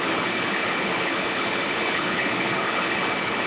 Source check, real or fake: fake